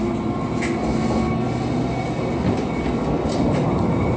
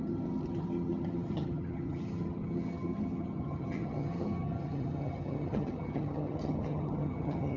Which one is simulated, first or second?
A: second